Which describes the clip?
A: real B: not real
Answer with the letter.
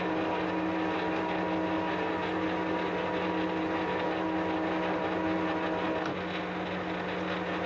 A